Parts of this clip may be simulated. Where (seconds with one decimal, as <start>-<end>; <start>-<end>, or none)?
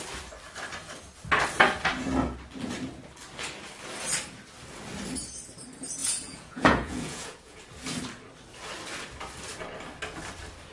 6.0-7.6